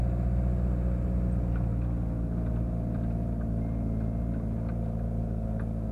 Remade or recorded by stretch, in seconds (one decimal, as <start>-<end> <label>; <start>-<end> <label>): 0.0-5.9 recorded